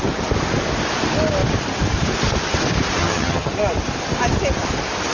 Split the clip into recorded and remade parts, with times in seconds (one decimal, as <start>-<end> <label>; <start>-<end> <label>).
0.0-3.0 recorded; 3.0-3.5 remade; 3.5-5.1 recorded